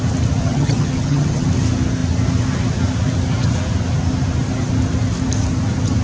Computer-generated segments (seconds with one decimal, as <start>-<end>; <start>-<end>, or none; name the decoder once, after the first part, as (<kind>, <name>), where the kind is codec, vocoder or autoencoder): 0.4-1.5 (vocoder, HiFi-GAN)